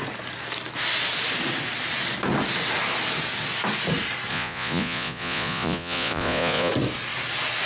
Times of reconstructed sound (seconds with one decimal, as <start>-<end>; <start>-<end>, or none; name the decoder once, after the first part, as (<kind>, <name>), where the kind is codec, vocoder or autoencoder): 4.3-6.7 (vocoder, Vocos)